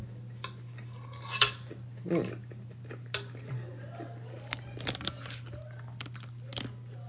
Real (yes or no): yes